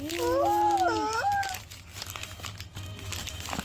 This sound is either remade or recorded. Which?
recorded